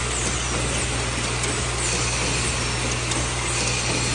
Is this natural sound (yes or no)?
yes